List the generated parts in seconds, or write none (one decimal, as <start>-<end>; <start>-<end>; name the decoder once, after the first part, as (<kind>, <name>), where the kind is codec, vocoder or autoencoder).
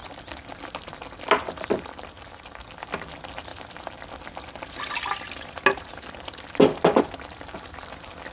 none